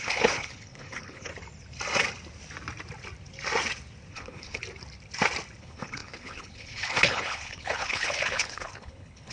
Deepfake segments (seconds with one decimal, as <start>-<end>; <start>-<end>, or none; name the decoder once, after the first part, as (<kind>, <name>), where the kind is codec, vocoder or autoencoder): 0.0-1.3 (codec, HILCodec); 4.1-4.6; 5.6-9.3